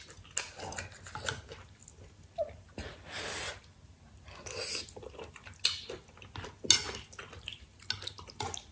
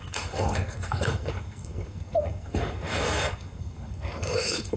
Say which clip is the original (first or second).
first